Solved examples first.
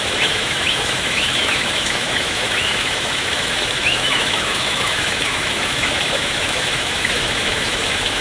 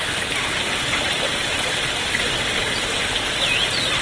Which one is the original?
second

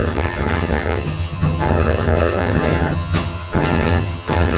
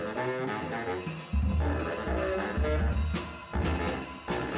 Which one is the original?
second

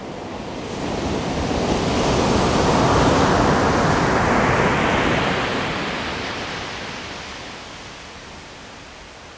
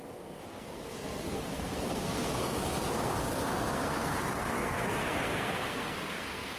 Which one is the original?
first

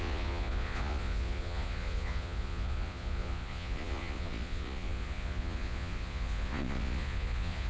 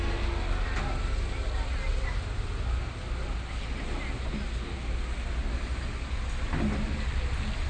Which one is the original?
second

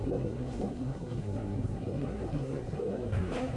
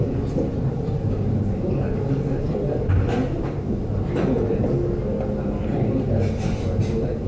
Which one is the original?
second